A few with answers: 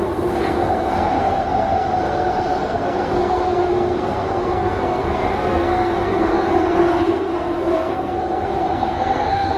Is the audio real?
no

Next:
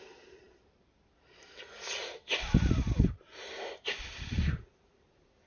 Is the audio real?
yes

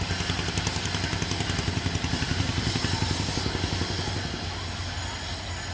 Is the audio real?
yes